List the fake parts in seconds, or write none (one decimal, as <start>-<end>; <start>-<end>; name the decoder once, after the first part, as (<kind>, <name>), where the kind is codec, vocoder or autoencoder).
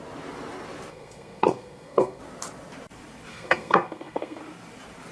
0.9-2.2 (codec, SNAC); 3.3-4.4